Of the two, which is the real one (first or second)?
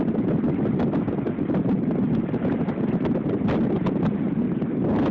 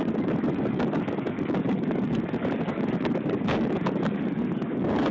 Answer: first